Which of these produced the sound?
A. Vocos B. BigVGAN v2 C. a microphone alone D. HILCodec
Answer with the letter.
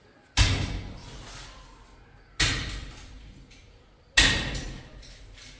C